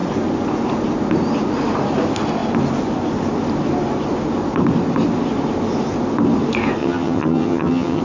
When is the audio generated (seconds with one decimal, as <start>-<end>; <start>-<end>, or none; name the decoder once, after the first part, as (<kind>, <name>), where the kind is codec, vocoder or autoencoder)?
6.8-8.0 (vocoder, HiFi-GAN)